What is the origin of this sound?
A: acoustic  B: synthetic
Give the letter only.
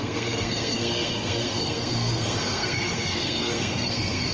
B